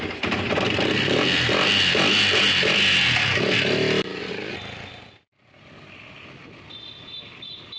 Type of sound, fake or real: real